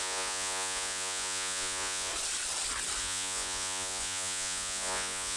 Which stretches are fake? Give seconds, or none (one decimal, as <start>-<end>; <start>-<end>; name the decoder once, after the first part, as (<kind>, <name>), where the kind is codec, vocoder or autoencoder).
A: 0.0-2.1 (vocoder, Vocos); 3.0-5.4